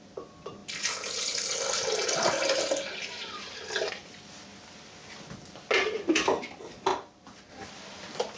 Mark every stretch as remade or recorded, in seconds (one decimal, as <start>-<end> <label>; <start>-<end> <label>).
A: 0.0-8.4 recorded